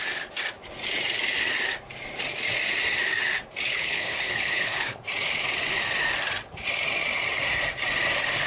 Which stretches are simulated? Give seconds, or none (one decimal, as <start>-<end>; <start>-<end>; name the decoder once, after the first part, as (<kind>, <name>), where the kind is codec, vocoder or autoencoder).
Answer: 3.6-5.0 (codec, HILCodec)